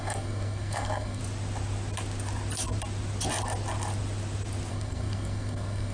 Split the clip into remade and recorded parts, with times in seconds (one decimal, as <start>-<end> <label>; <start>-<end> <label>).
0.0-1.2 remade; 1.2-4.7 recorded; 4.7-5.9 remade